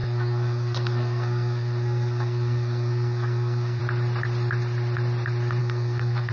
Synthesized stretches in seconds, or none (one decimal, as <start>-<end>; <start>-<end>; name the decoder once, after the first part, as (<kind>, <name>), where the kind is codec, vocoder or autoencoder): 0.0-3.8 (codec, SNAC); 5.6-6.3